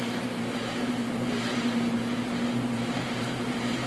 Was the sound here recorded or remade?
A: remade